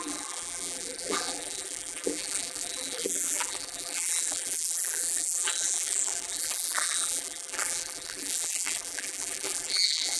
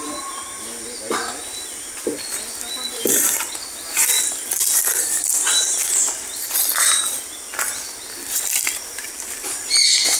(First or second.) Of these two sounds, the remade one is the first